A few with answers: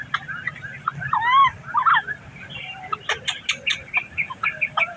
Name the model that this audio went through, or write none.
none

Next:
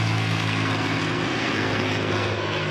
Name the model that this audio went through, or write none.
codec, SNAC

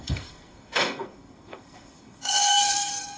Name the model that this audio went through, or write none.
codec, SNAC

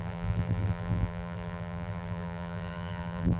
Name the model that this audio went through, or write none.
vocoder, BigVGAN v2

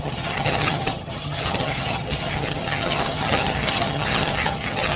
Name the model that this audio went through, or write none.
vocoder, HiFi-GAN